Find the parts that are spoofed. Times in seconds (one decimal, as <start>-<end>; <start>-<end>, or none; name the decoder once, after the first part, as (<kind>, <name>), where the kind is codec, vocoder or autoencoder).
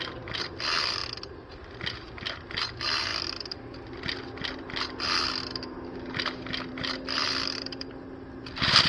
7.2-7.9 (vocoder, BigVGAN v2)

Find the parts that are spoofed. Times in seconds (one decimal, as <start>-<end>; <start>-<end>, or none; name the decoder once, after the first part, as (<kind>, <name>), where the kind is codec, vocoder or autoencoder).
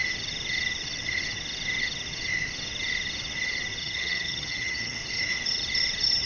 3.8-5.0 (vocoder, HiFi-GAN)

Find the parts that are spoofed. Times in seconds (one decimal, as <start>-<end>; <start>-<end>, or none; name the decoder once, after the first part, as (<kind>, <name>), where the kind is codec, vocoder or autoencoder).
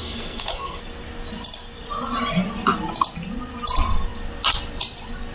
0.0-0.8 (codec, SNAC)